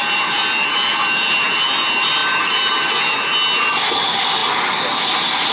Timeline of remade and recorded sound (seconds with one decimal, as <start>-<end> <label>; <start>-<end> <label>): 0.0-5.5 recorded